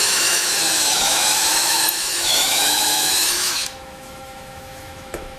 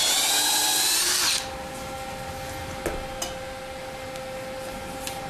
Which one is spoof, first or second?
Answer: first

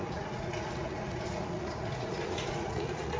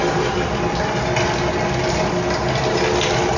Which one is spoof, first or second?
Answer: first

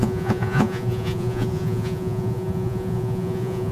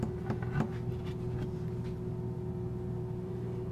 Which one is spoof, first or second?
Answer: first